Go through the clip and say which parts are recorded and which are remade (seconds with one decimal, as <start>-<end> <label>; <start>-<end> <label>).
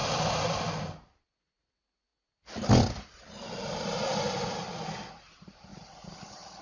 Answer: 0.0-6.6 recorded